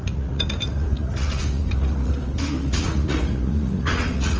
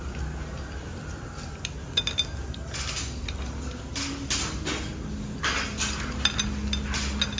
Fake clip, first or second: first